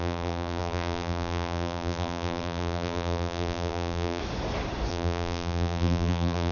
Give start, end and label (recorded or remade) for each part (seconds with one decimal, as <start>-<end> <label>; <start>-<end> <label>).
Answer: 0.0-4.2 remade; 4.2-4.9 recorded; 4.9-6.5 remade